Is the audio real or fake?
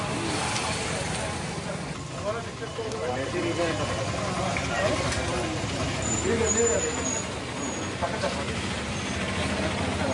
real